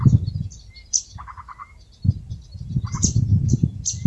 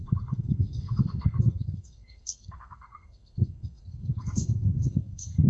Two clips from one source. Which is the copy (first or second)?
second